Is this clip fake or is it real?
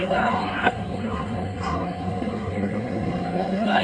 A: fake